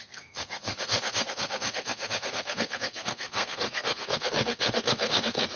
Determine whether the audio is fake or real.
fake